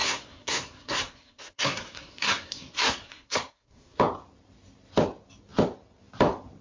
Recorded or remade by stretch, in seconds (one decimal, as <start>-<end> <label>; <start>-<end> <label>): 0.0-4.0 remade; 4.0-6.6 recorded